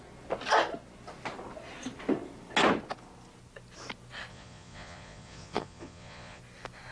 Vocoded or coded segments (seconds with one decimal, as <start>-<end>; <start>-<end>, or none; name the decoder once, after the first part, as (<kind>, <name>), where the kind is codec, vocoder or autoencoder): 4.3-6.4 (vocoder, Vocos)